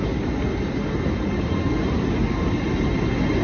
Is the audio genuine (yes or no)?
yes